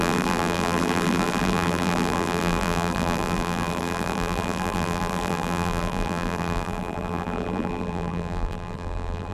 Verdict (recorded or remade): remade